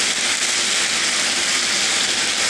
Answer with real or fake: real